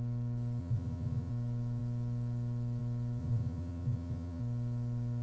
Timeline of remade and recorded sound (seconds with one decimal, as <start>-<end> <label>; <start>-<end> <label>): 0.0-0.6 recorded; 0.6-1.3 remade; 1.3-3.2 recorded; 3.2-4.4 remade; 4.4-5.2 recorded